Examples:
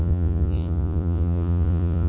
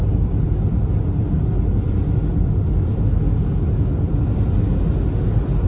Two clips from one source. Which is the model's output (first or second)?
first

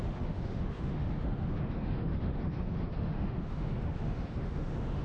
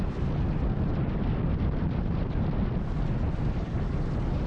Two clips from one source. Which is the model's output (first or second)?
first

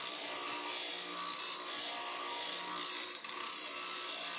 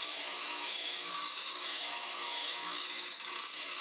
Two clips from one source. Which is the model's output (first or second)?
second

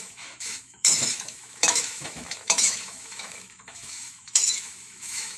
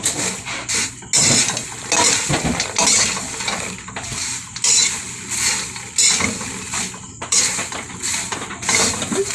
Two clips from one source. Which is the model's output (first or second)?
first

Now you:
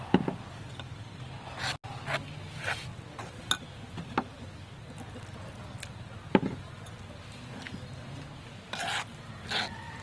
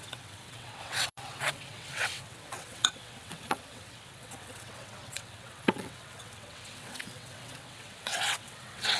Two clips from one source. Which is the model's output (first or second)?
second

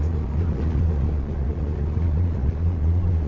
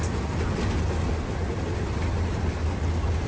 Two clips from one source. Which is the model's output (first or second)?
first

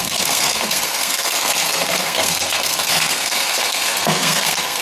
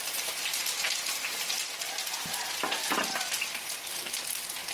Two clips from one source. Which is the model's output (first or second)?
first